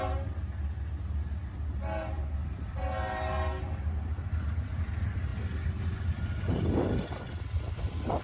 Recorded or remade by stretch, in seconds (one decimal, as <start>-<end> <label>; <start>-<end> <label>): 0.0-8.2 recorded